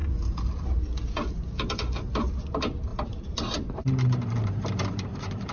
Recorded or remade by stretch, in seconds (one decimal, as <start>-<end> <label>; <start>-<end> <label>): 0.0-2.9 recorded; 2.9-5.5 remade